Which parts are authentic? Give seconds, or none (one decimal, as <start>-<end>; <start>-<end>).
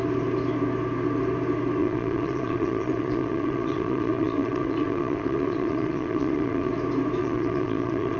0.0-1.8; 6.7-7.2